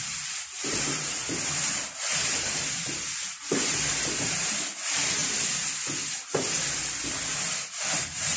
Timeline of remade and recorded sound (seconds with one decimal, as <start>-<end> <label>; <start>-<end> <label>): 0.0-1.2 remade; 1.2-3.4 recorded; 3.4-5.2 remade; 5.2-8.0 recorded; 8.0-8.4 remade